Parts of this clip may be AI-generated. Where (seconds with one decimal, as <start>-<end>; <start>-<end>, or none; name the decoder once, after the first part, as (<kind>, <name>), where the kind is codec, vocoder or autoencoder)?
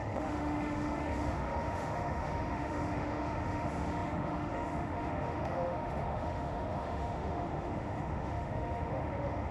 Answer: 0.0-9.5 (autoencoder, DAC-VAE)